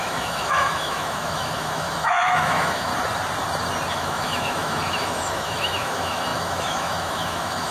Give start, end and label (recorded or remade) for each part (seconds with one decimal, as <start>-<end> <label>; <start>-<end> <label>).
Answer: 0.0-2.9 remade; 2.9-3.9 recorded; 3.9-7.7 remade